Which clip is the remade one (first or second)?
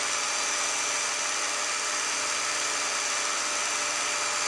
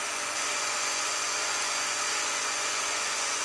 second